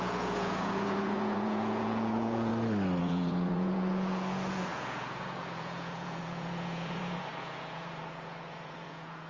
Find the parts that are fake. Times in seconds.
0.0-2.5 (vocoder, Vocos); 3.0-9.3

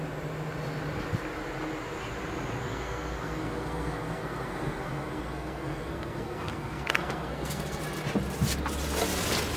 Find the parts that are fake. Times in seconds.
2.6-7.8 (codec, SNAC)

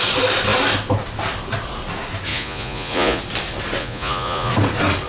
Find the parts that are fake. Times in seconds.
2.3-3.2 (vocoder, Vocos); 3.8-4.5

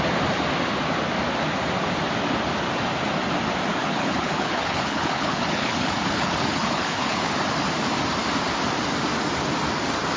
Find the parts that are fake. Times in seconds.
3.7-7.3 (codec, HILCodec)

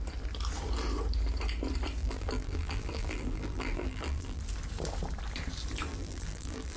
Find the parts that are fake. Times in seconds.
2.0-4.4 (vocoder, BigVGAN v2); 5.9-6.8

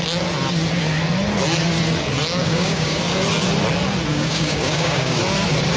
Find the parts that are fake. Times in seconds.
2.4-3.0 (codec, DAC); 4.1-5.2